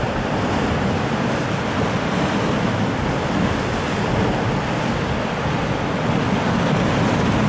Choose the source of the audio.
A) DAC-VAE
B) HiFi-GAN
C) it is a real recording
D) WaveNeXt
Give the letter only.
C